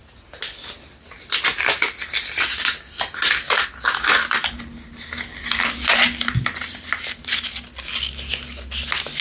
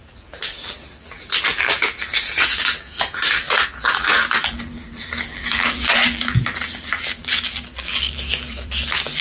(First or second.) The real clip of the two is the first